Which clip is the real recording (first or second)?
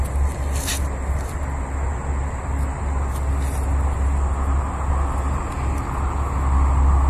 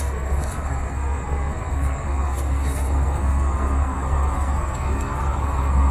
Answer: first